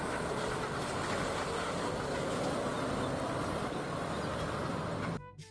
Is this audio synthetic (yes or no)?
no